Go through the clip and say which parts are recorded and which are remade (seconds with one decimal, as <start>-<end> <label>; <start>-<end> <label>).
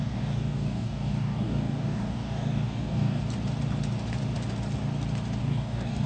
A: 0.0-3.2 remade; 3.2-5.4 recorded; 5.4-6.1 remade